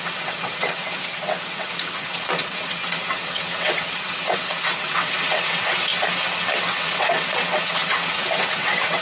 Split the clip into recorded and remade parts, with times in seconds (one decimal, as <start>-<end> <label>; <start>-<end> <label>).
0.0-5.9 remade; 5.9-6.7 recorded; 6.7-9.0 remade